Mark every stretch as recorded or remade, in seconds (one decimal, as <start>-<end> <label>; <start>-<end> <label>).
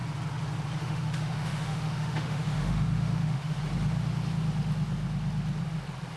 0.0-0.8 recorded; 0.8-3.6 remade; 3.6-6.2 recorded